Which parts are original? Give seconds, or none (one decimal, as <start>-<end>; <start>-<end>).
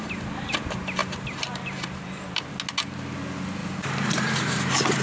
0.0-1.0; 2.5-3.6